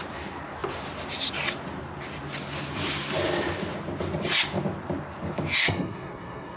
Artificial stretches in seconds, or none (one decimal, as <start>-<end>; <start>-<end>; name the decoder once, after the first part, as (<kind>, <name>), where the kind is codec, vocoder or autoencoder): 5.6-6.6 (codec, SNAC)